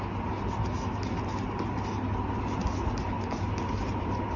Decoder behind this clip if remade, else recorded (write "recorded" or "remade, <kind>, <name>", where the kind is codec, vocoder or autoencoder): recorded